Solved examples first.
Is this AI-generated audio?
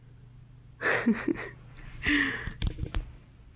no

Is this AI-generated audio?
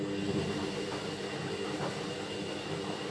no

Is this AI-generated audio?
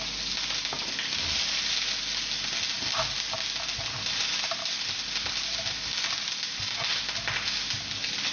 no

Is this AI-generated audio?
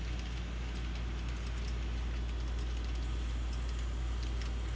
no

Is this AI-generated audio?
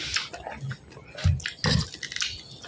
no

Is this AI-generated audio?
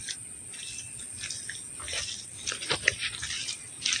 no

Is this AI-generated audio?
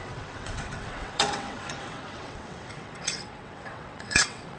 yes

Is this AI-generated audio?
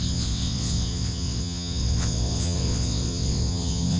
yes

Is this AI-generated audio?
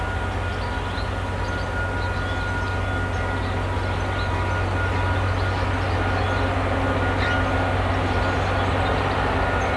no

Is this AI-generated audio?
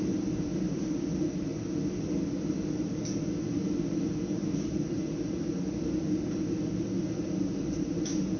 no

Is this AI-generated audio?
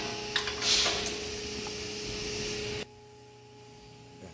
no